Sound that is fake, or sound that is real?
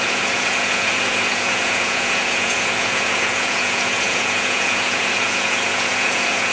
fake